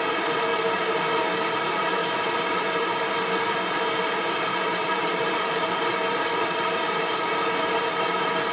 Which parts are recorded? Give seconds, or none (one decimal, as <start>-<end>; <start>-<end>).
0.0-0.5; 1.1-2.0; 2.6-5.0; 5.9-8.5